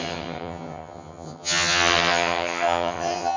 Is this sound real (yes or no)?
no